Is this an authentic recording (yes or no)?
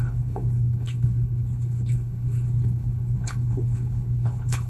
no